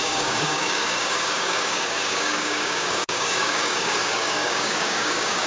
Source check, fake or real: fake